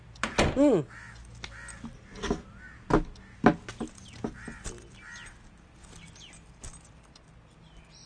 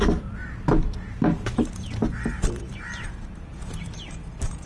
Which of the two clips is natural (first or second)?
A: first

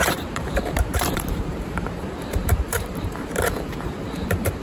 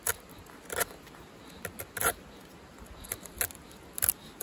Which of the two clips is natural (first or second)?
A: second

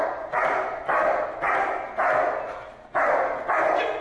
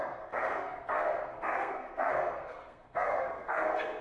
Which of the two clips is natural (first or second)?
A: first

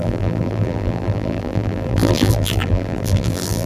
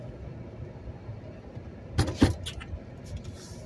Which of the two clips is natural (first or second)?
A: second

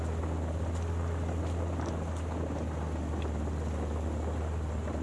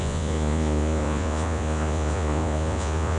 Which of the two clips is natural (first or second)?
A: first